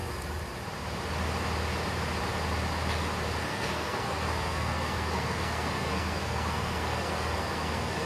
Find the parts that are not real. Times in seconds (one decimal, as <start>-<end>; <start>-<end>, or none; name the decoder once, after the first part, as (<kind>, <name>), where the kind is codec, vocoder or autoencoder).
3.4-8.1 (codec, SNAC)